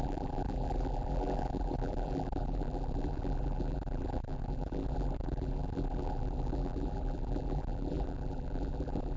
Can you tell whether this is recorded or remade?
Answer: remade